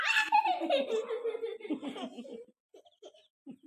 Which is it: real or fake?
real